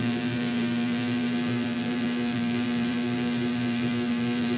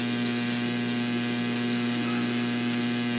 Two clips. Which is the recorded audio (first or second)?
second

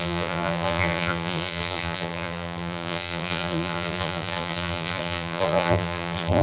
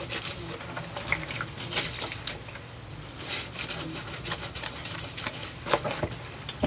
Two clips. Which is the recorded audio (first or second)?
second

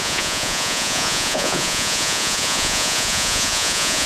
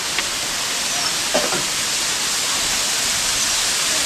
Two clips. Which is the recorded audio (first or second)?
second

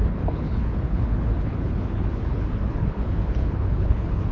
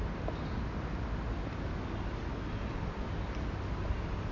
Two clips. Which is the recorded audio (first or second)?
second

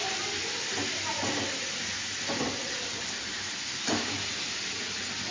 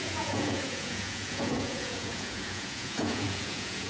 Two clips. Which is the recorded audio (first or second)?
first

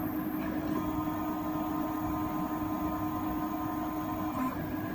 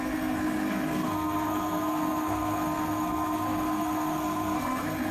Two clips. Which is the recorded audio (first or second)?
first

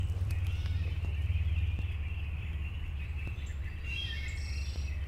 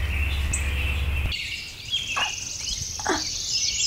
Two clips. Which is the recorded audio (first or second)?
second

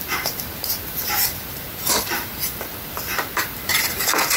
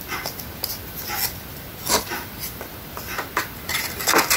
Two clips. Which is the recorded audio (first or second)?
second